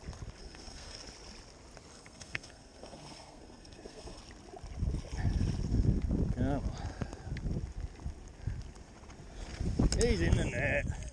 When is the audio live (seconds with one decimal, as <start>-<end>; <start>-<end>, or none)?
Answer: 0.0-0.4; 1.0-1.9; 4.2-11.1